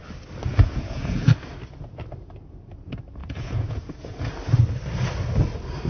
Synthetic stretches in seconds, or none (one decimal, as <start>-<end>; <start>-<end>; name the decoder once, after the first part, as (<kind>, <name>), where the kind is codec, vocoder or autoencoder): 0.5-1.3 (vocoder, Vocos); 3.2-4.3